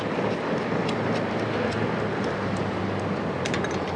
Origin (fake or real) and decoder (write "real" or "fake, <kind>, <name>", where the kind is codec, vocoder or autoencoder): real